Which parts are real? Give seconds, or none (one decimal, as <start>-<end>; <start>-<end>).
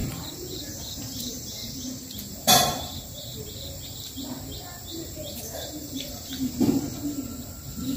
3.5-4.9; 6.4-8.0